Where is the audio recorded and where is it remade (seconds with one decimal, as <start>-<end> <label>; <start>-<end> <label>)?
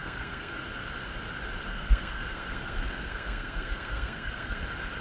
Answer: 0.0-0.6 remade; 0.6-1.7 recorded; 1.7-4.6 remade; 4.6-5.0 recorded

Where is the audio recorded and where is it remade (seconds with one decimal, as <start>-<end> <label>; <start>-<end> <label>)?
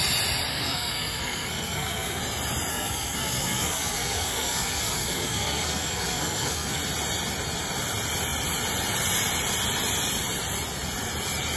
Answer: 0.0-0.5 recorded; 0.5-2.2 remade; 2.2-2.7 recorded; 2.7-6.8 remade; 6.8-11.6 recorded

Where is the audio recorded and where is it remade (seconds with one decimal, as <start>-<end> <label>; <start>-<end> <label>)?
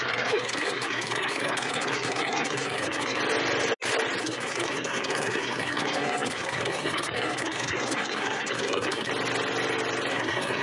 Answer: 0.0-3.2 remade; 3.2-4.2 recorded; 4.2-9.1 remade; 9.1-10.1 recorded; 10.1-10.6 remade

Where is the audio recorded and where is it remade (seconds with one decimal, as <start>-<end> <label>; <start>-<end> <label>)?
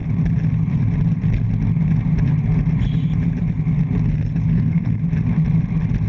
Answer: 0.0-4.5 recorded; 4.5-5.0 remade; 5.0-6.1 recorded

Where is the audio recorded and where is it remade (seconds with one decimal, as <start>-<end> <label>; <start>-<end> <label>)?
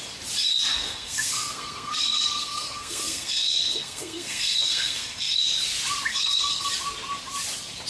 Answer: 0.0-0.7 recorded; 0.7-5.4 remade; 5.4-6.1 recorded; 6.1-6.7 remade; 6.7-7.9 recorded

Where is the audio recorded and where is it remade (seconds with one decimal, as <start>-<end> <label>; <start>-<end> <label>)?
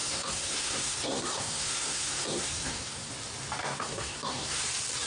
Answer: 0.0-3.1 remade; 3.1-3.6 recorded; 3.6-4.6 remade; 4.6-5.1 recorded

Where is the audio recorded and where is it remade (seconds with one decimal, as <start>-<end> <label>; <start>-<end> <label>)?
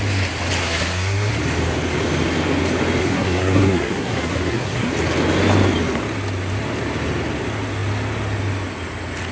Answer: 0.0-0.6 recorded; 0.6-1.3 remade; 1.3-3.0 recorded; 3.0-4.9 remade; 4.9-9.3 recorded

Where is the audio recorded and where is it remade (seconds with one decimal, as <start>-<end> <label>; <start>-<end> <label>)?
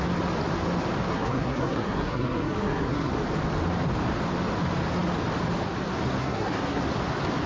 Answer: 0.0-1.1 recorded; 1.1-3.1 remade; 3.1-6.2 recorded; 6.2-6.8 remade; 6.8-7.5 recorded